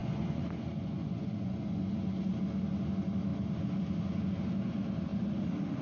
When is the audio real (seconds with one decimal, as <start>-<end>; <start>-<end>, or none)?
1.8-5.8